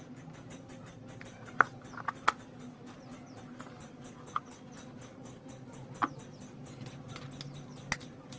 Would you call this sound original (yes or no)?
yes